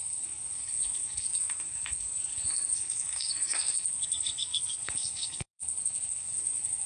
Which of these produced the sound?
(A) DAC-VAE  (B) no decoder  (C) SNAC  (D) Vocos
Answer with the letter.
C